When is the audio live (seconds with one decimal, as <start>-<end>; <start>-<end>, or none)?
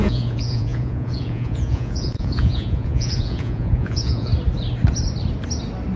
4.3-6.0